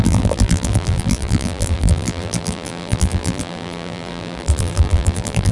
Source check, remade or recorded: remade